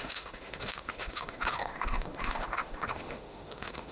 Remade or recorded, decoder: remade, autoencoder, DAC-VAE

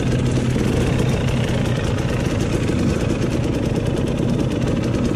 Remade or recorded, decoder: recorded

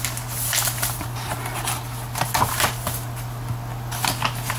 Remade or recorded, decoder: recorded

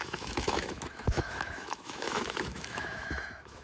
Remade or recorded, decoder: remade, autoencoder, DAC-VAE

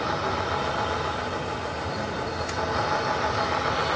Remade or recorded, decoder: recorded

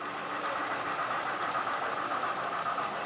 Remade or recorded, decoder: recorded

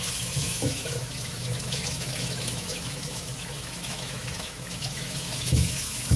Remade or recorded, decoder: remade, autoencoder, DAC-VAE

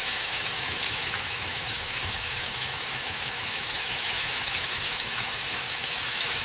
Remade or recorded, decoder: remade, autoencoder, DAC-VAE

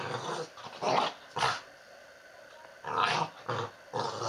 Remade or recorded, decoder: recorded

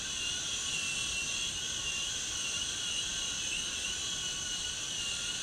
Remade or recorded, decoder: recorded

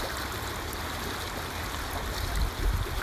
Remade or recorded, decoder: recorded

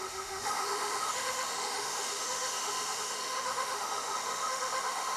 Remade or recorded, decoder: remade, autoencoder, DAC-VAE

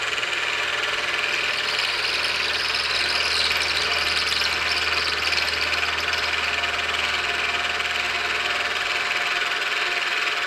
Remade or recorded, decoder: recorded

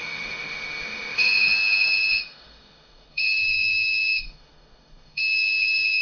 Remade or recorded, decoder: remade, autoencoder, DAC-VAE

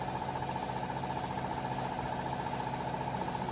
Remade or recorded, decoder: recorded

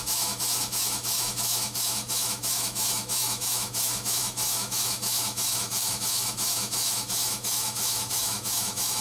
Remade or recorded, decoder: remade, autoencoder, DAC-VAE